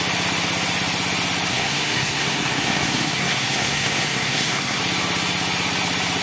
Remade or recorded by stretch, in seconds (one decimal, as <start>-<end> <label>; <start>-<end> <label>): 0.0-1.5 recorded; 1.5-4.8 remade; 4.8-6.2 recorded